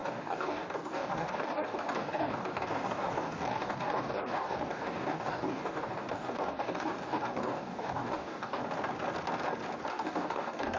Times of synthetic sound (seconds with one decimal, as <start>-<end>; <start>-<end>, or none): 0.0-8.6; 9.9-10.8